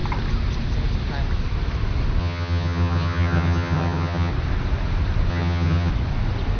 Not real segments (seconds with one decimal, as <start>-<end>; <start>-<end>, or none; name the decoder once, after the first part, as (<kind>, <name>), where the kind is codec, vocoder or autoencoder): 2.2-4.3 (vocoder, HiFi-GAN); 5.3-5.9